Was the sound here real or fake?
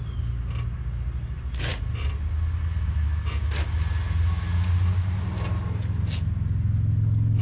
real